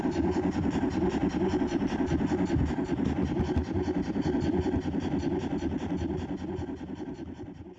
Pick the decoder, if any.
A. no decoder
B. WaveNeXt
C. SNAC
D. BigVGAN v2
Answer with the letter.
D